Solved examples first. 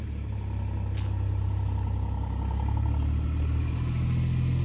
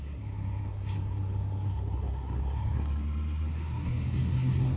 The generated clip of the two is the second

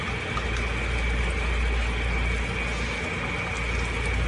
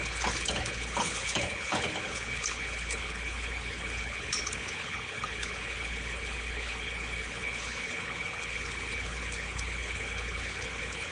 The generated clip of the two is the second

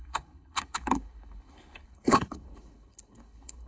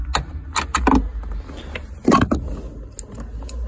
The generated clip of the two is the first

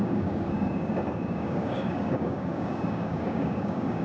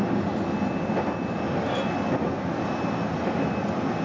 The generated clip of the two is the first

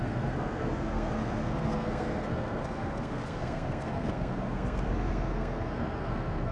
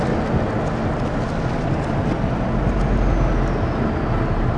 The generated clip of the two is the first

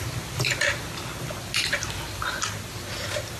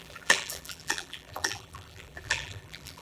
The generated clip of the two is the second